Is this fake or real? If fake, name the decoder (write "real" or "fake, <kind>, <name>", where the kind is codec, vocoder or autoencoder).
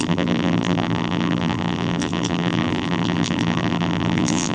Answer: fake, vocoder, BigVGAN v2